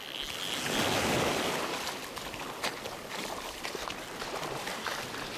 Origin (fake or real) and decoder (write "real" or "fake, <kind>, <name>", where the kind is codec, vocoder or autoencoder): real